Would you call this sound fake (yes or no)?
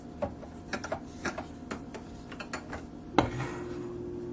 no